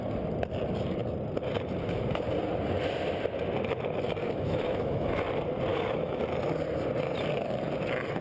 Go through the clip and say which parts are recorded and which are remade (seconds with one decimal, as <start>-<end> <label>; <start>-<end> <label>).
0.0-4.2 recorded; 4.2-5.2 remade; 5.2-5.7 recorded; 5.7-6.2 remade; 6.2-8.2 recorded